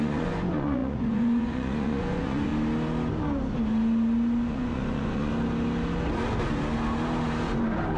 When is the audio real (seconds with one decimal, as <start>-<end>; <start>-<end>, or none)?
2.5-4.5; 5.3-8.0